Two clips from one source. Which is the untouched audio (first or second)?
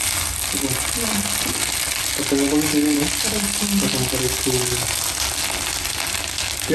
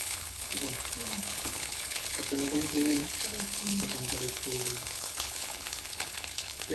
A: first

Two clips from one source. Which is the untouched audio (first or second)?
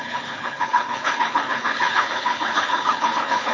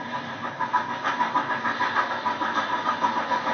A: second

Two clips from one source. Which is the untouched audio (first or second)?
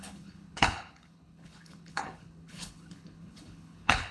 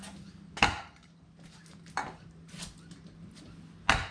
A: second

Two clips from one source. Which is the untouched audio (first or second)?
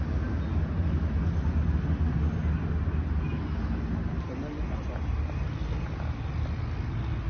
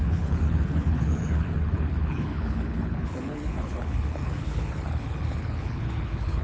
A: first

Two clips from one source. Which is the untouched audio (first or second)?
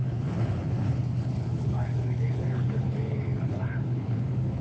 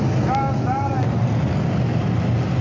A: second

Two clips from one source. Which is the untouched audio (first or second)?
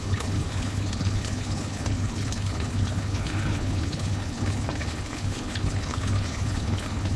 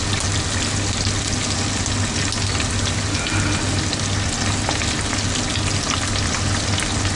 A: second